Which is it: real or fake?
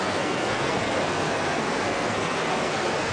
fake